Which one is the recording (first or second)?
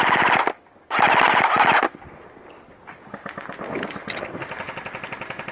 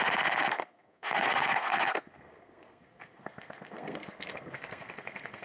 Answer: first